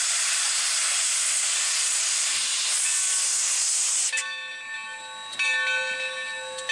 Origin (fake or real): real